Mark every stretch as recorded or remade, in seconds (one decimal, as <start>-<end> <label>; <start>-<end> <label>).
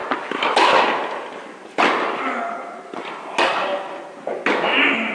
0.0-5.1 recorded